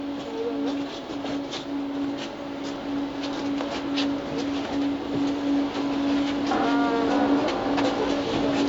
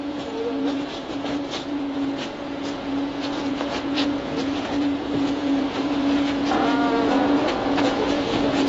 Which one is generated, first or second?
second